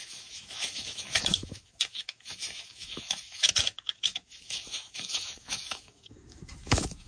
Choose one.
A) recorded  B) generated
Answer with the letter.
B